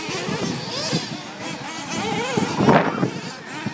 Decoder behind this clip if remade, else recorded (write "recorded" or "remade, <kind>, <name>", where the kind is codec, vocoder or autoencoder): recorded